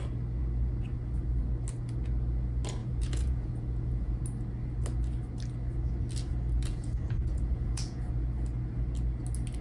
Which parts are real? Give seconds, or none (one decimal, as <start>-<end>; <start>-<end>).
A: 0.0-2.8; 4.2-6.6; 8.1-9.6